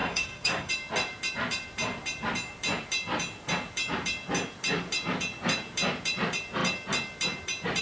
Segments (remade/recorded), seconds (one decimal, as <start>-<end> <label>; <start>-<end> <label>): 0.0-0.7 remade; 0.7-7.8 recorded